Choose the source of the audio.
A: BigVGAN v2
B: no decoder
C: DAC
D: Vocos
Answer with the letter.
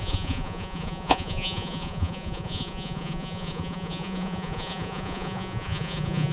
D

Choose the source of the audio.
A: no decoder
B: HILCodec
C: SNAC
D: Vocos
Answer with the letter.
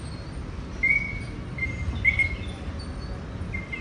A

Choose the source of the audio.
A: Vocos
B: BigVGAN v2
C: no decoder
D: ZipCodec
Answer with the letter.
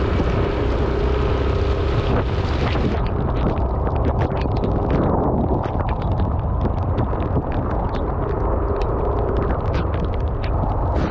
C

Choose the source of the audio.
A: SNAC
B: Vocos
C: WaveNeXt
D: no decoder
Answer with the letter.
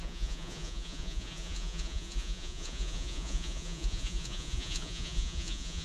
B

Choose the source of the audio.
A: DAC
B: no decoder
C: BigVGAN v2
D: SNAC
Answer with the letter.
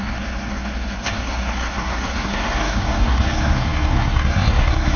D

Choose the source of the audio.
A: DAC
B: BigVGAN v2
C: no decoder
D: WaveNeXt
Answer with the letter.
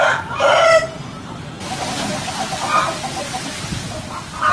C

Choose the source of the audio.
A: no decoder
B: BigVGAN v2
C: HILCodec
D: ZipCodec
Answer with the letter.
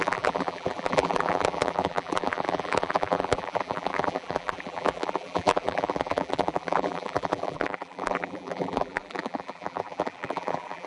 B